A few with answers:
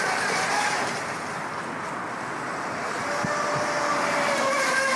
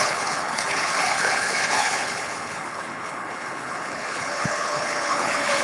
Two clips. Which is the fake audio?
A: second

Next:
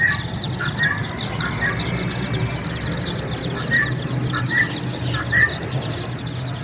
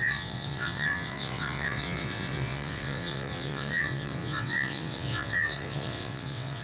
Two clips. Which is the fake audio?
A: second